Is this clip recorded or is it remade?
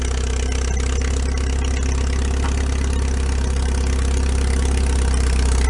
recorded